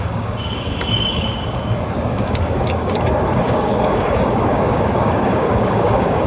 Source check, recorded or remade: remade